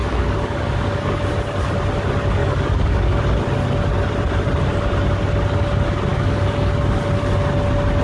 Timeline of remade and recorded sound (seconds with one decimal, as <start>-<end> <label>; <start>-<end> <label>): 0.0-1.2 remade; 1.2-2.4 recorded; 2.4-3.2 remade; 3.2-6.1 recorded; 6.1-6.7 remade; 6.7-8.0 recorded